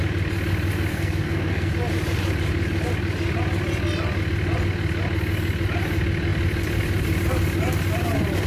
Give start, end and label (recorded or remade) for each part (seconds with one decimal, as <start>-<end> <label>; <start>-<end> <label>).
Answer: 0.0-0.9 recorded; 0.9-1.7 remade; 1.7-8.5 recorded

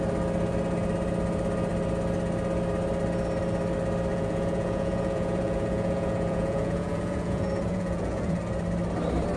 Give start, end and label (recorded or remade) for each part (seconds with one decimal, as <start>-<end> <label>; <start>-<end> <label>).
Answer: 0.0-4.1 recorded; 4.1-8.4 remade; 8.4-9.4 recorded

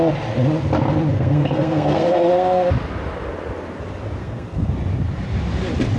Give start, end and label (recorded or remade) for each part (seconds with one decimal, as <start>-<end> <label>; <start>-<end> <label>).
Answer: 0.0-1.1 recorded; 1.1-2.7 remade; 2.7-4.2 recorded; 4.2-4.7 remade; 4.7-6.0 recorded

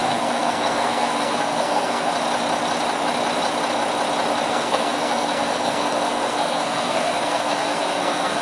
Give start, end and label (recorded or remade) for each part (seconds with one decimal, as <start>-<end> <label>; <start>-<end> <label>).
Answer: 0.0-2.1 remade; 2.1-4.5 recorded; 4.5-8.4 remade

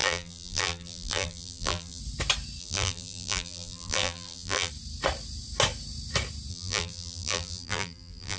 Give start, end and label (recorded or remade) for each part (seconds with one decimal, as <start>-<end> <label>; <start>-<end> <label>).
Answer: 0.0-2.0 remade; 2.0-2.6 recorded; 2.6-4.7 remade; 4.7-6.5 recorded; 6.5-8.4 remade

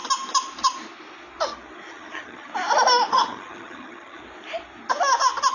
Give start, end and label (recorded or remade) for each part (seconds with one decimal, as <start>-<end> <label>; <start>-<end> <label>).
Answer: 0.0-1.9 recorded; 1.9-2.5 remade; 2.5-3.1 recorded; 3.1-4.2 remade; 4.2-5.5 recorded